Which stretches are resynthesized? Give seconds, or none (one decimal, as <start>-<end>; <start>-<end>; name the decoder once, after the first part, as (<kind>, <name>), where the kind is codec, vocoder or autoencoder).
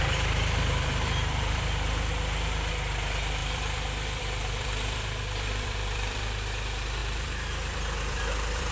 0.0-2.7 (vocoder, BigVGAN v2); 3.4-6.2; 7.0-8.7